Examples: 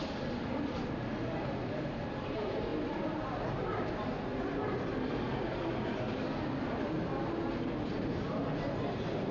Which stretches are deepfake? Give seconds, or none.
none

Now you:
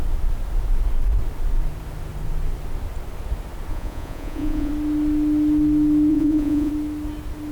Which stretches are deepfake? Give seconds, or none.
3.7-4.7; 6.1-6.7

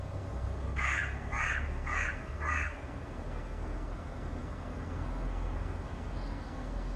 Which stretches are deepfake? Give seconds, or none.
0.0-7.0

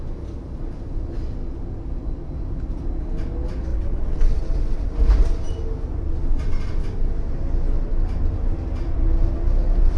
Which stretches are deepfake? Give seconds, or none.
3.7-4.9

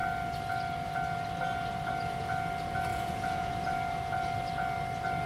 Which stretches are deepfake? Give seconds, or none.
2.9-3.5